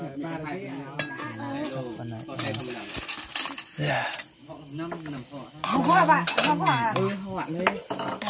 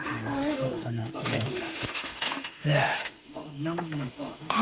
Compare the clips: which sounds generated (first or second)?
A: second